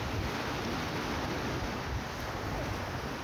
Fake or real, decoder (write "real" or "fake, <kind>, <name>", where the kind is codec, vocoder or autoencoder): real